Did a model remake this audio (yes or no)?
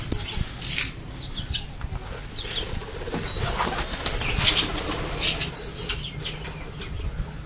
no